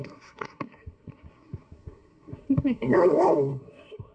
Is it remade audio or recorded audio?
remade